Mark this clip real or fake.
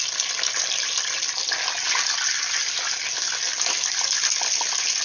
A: real